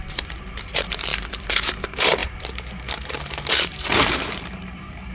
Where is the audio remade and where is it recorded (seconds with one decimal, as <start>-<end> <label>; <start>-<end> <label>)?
0.0-5.1 remade